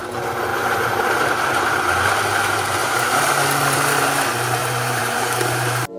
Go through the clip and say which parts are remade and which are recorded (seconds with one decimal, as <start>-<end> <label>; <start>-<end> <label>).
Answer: 0.0-0.5 recorded; 0.5-1.3 remade; 1.3-2.8 recorded; 2.8-3.3 remade; 3.3-4.6 recorded; 4.6-6.0 remade